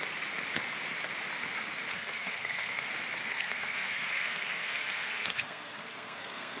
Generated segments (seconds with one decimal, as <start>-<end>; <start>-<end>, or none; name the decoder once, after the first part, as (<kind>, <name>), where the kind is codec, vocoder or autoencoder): 1.9-2.9 (codec, SNAC); 3.3-6.6